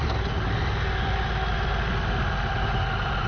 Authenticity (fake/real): real